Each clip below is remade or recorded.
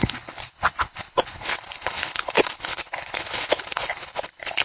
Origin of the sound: remade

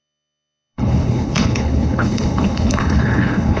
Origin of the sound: remade